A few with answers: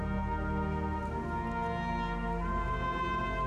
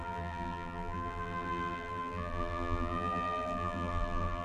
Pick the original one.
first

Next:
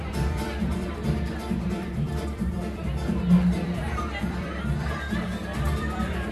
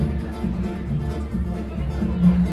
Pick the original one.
second